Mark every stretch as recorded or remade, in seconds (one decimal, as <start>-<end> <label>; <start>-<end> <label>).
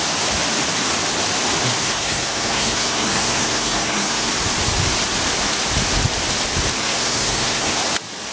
0.0-1.8 recorded; 1.8-4.3 remade; 4.3-6.8 recorded; 6.8-7.8 remade; 7.8-8.3 recorded